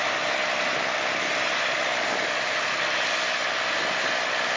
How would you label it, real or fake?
real